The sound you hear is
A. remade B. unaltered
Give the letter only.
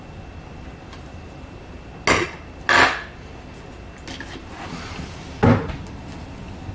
B